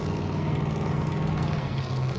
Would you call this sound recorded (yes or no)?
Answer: no